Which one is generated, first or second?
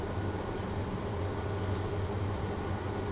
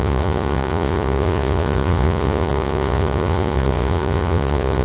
second